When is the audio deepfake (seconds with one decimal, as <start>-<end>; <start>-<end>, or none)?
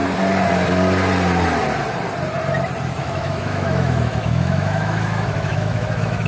3.0-6.3